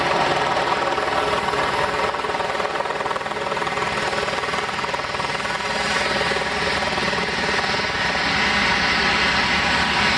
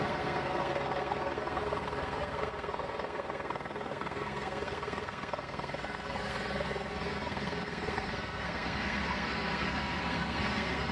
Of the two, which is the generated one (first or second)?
second